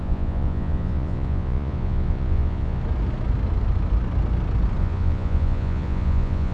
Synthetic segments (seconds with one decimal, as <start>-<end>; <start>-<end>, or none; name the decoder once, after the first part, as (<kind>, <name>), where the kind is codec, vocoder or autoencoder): 0.0-2.8 (vocoder, Vocos); 4.8-6.5